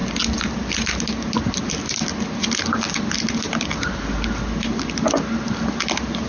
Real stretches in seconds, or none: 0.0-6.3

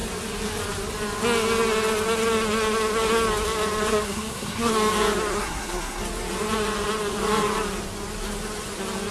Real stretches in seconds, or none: 0.0-3.9; 4.7-5.3; 6.0-9.1

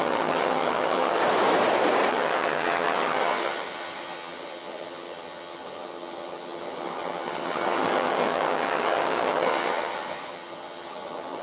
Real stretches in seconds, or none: 1.2-2.1

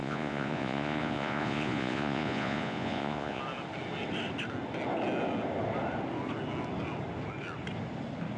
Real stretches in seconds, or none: 3.4-8.4

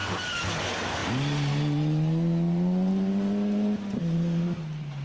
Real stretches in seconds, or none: 0.0-5.0

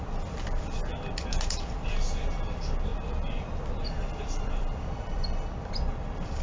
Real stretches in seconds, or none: none

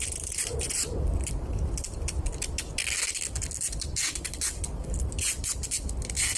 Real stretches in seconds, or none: 0.0-6.4

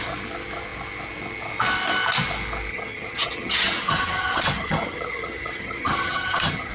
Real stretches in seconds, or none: 0.0-2.7